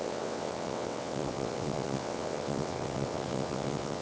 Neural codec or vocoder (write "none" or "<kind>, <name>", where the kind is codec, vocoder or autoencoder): vocoder, WaveNeXt